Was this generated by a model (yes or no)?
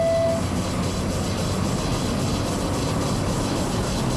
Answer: no